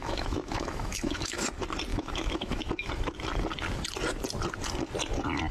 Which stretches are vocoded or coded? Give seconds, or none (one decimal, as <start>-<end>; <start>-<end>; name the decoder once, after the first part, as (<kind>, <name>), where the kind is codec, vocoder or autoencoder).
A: 0.0-1.4 (autoencoder, DAC-VAE); 1.9-2.9

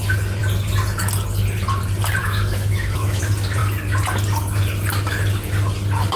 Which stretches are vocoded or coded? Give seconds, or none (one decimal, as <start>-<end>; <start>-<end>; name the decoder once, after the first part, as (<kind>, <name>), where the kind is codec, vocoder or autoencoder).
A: 2.2-3.2 (autoencoder, DAC-VAE)

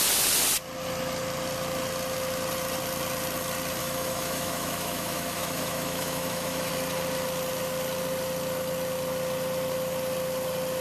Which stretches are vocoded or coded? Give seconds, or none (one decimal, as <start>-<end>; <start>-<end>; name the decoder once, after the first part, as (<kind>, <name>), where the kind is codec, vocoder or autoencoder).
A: 3.8-6.7 (autoencoder, DAC-VAE)